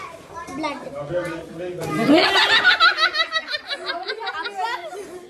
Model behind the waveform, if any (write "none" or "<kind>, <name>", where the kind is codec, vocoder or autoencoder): none